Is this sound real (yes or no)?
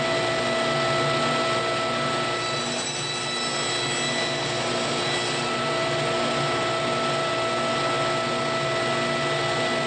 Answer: yes